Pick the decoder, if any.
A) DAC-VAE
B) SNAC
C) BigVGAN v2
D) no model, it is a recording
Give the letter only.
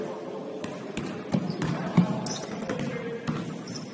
D